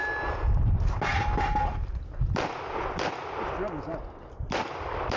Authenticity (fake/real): real